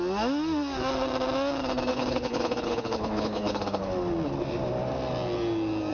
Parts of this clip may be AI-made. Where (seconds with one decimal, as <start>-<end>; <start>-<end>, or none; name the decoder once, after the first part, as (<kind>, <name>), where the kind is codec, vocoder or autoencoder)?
1.9-3.9 (codec, HILCodec)